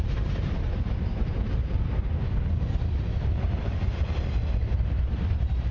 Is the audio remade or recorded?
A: remade